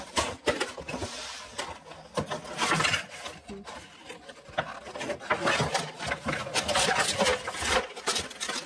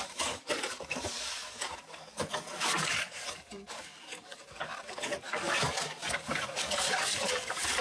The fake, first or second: second